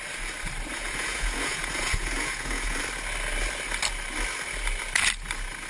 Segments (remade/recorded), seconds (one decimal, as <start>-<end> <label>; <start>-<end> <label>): 0.0-0.7 recorded; 0.7-2.8 remade; 2.8-5.7 recorded

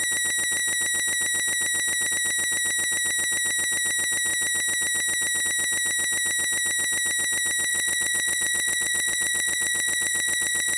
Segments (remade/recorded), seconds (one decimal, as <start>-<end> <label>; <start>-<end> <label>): 0.0-7.7 recorded; 7.7-10.8 remade

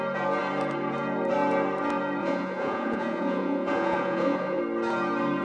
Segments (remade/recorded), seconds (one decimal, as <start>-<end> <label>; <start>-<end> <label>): 0.0-2.2 recorded; 2.2-4.6 remade; 4.6-5.4 recorded

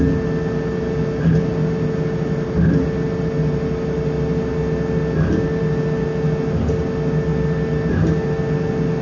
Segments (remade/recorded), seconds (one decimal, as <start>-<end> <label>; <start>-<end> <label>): 0.0-9.0 recorded

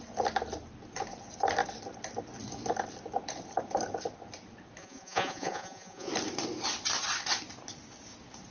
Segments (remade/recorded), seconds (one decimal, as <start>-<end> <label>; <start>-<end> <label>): 0.0-4.8 recorded; 4.8-6.1 remade; 6.1-8.5 recorded

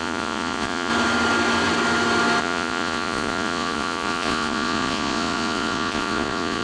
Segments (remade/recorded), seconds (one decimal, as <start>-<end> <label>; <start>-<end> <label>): 0.0-0.9 remade; 0.9-2.4 recorded; 2.4-6.6 remade